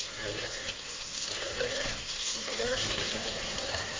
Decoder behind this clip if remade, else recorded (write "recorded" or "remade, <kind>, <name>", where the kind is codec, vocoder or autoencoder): remade, codec, SNAC